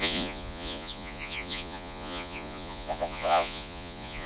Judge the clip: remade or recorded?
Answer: remade